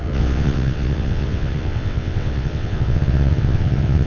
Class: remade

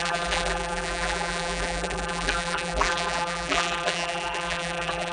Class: remade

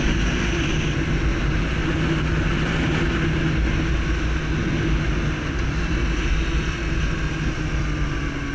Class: recorded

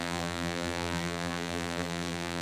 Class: remade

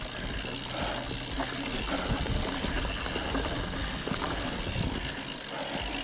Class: recorded